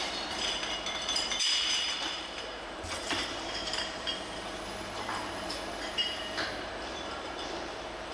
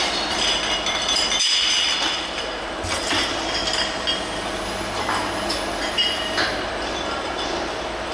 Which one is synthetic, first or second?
first